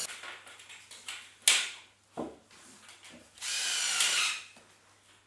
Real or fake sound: real